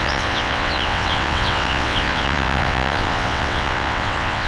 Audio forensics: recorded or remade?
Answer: remade